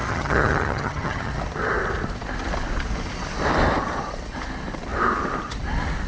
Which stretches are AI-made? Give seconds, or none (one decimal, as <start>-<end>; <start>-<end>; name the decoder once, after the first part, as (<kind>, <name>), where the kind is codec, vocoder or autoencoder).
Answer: 0.0-1.4 (vocoder, HiFi-GAN)